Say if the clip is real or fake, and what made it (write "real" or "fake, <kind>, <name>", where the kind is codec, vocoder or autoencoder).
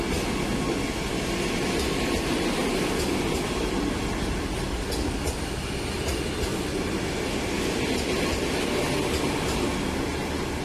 real